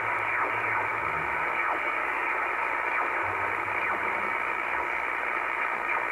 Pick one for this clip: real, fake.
real